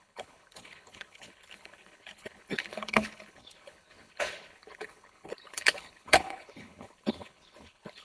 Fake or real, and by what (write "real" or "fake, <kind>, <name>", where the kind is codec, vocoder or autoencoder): fake, codec, HILCodec